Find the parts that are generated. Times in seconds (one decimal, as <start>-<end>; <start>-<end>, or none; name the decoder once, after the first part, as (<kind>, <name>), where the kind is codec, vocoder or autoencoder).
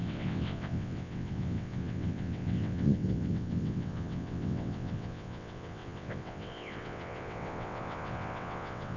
0.0-9.0 (vocoder, WaveNeXt)